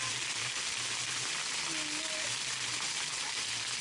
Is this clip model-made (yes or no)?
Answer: no